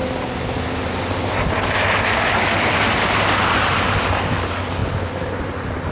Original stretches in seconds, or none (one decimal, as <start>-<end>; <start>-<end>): 0.0-5.9